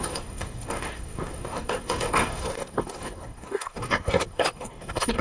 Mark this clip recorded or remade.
remade